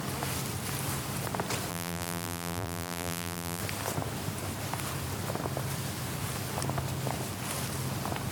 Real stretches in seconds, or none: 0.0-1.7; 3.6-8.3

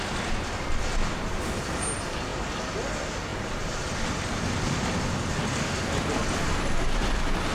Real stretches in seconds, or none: 0.0-0.9; 1.7-3.3; 5.9-7.5

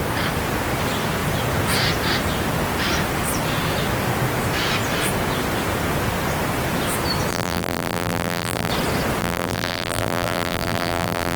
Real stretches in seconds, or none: 0.0-7.3; 8.7-9.2

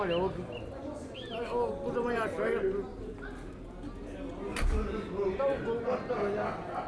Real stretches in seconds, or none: 0.0-6.9